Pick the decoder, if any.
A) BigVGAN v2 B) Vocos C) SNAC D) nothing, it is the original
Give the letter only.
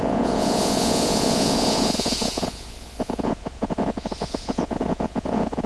B